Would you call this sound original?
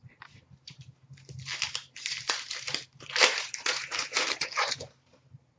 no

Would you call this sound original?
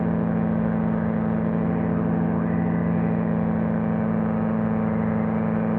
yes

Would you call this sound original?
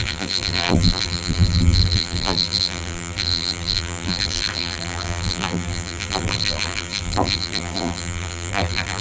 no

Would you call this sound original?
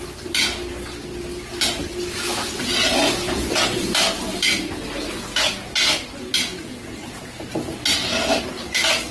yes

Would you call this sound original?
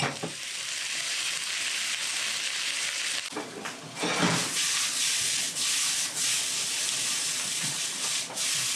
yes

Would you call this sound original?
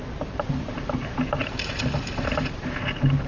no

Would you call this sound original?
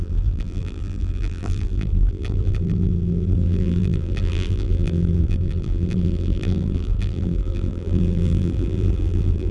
no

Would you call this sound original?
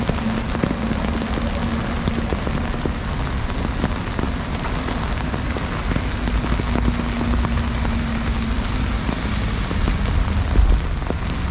yes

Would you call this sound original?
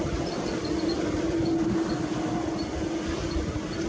yes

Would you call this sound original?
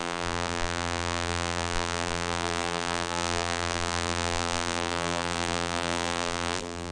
no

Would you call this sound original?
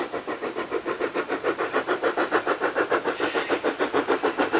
no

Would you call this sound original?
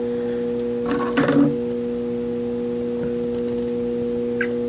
yes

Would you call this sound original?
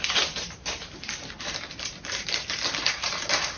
no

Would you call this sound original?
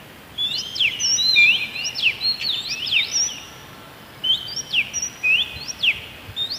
yes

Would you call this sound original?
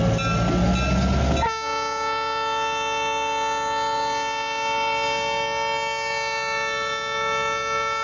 yes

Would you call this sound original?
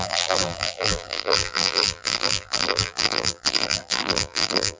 no